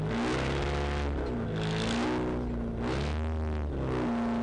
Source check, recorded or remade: recorded